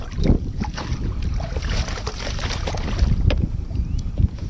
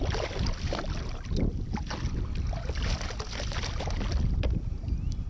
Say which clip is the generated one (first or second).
first